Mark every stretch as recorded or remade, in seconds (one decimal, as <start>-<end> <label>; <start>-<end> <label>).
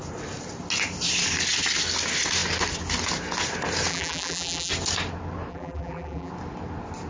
0.0-3.9 recorded; 3.9-4.7 remade; 4.7-5.5 recorded; 5.5-6.3 remade; 6.3-7.1 recorded